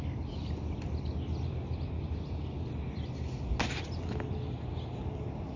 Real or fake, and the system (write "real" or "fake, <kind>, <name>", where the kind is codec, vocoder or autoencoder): real